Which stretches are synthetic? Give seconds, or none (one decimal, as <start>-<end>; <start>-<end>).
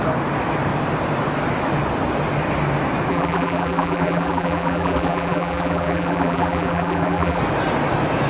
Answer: 3.1-7.4